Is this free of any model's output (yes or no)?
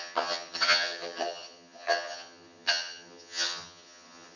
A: no